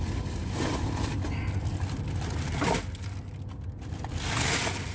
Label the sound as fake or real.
real